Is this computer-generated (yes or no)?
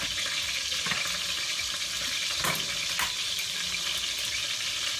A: no